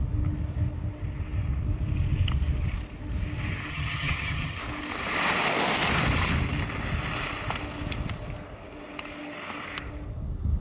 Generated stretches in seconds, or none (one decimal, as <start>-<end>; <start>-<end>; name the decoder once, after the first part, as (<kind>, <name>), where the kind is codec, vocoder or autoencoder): 3.7-4.6 (vocoder, HiFi-GAN)